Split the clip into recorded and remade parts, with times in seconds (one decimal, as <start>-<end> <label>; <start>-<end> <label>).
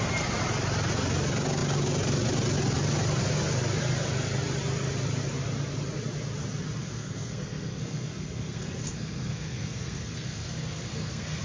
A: 0.0-6.8 recorded; 6.8-11.4 remade